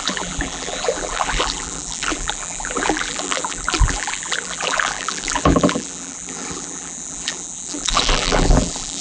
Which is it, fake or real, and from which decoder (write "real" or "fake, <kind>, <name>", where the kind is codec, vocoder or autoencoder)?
fake, vocoder, BigVGAN v2